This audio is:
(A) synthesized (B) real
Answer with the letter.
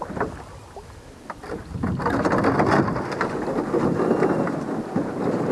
B